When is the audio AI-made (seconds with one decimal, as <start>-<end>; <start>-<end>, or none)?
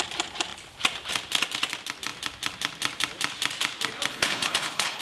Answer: 4.1-5.0